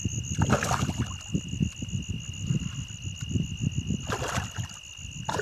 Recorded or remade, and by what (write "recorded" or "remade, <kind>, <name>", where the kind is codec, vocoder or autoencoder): recorded